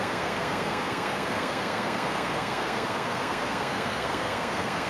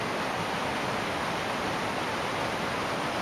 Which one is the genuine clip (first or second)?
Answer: second